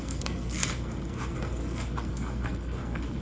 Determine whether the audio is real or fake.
fake